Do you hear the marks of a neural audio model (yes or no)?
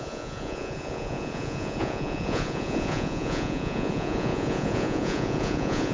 yes